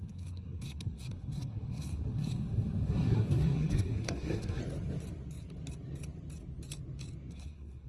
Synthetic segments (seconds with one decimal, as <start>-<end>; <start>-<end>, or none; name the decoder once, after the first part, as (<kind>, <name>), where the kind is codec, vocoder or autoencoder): 0.0-4.6 (codec, SNAC); 7.3-7.9